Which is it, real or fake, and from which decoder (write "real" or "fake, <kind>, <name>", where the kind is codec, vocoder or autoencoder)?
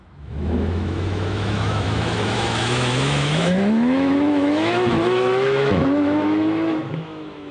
fake, autoencoder, DAC-VAE